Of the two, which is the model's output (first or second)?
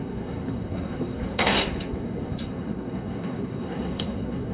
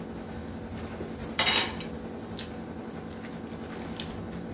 first